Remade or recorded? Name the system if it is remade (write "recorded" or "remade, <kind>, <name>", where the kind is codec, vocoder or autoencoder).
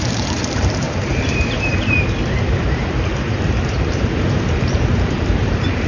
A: remade, vocoder, BigVGAN v2